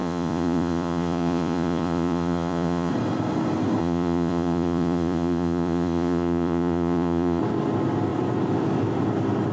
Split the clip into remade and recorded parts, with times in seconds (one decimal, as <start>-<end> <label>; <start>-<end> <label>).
0.0-2.9 remade; 2.9-3.8 recorded; 3.8-7.4 remade; 7.4-9.5 recorded